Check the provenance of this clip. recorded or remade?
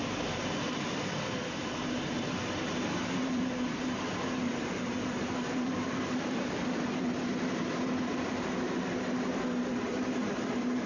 remade